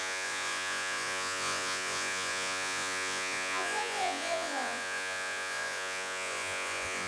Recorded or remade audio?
remade